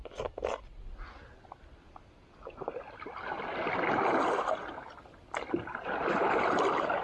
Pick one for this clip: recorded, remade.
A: recorded